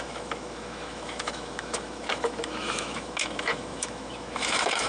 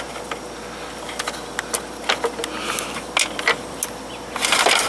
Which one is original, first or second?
second